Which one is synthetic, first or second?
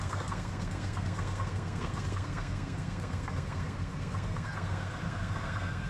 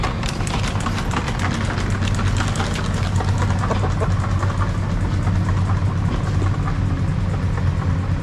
first